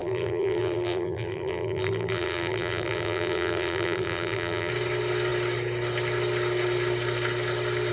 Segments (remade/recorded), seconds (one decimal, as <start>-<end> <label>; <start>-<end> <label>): 0.0-4.7 remade; 4.7-7.9 recorded